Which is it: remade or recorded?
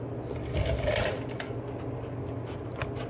recorded